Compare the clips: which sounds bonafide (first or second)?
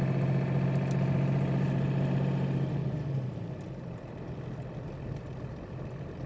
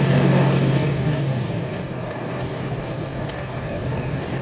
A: first